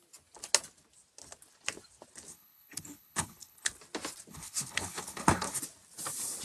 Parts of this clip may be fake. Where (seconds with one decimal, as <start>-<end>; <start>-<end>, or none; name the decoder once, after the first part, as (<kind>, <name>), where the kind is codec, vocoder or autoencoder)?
2.3-3.7 (codec, HILCodec); 4.3-5.6